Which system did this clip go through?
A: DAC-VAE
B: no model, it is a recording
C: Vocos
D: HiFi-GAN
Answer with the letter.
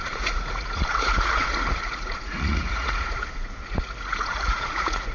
C